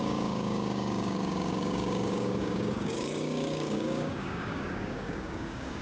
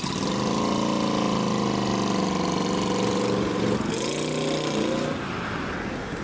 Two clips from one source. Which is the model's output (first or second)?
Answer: first